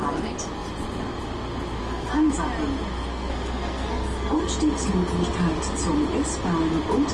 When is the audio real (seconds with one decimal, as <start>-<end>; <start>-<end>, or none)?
0.0-1.8; 2.3-3.1; 4.5-7.1